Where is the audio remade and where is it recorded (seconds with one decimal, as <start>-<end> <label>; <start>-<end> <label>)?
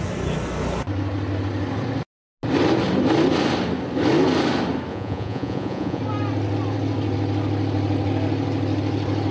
0.0-4.9 recorded; 4.9-6.0 remade; 6.0-9.3 recorded